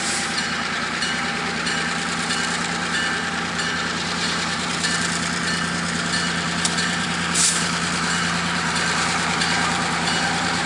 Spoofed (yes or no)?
yes